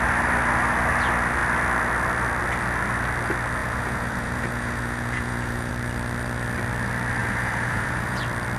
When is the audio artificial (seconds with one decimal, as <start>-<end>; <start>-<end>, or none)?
3.6-5.7; 7.2-8.2